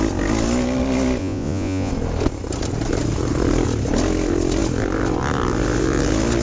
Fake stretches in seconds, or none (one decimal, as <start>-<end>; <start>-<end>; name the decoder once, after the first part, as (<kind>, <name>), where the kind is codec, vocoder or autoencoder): 1.2-1.9 (vocoder, Vocos)